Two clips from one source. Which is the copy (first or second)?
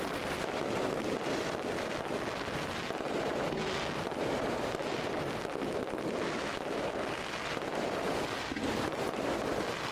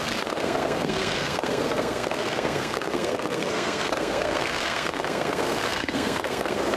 second